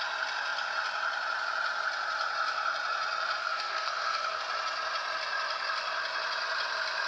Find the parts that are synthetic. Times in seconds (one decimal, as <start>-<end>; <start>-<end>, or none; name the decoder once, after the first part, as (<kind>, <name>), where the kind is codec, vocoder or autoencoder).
3.4-4.4 (codec, SNAC)